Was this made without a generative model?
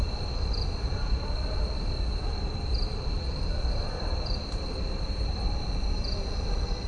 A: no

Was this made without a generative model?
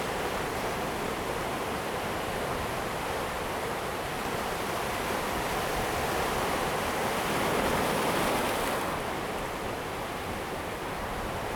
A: no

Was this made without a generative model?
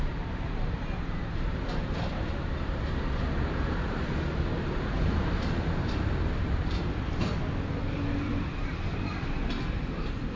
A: no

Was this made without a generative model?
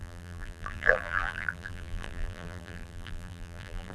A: no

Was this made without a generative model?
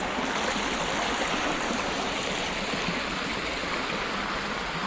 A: no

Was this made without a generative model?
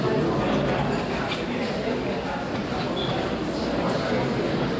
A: yes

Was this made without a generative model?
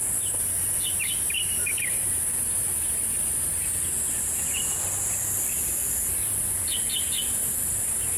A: yes